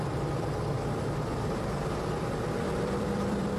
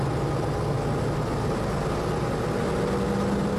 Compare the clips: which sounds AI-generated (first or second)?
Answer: first